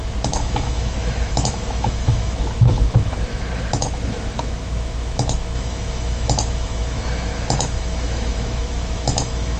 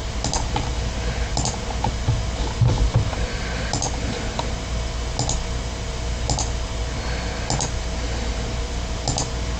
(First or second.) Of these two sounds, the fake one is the first